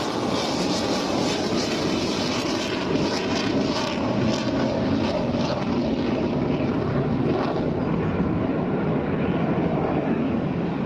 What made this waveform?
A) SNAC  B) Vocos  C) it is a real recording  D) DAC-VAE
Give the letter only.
C